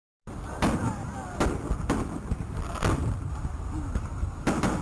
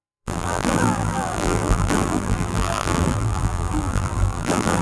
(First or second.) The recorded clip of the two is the first